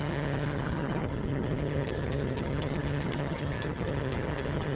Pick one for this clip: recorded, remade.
remade